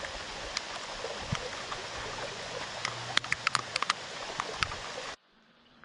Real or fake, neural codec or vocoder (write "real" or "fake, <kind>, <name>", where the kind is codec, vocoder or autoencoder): fake, vocoder, Vocos